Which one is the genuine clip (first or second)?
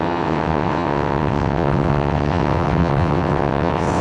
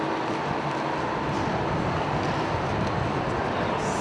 second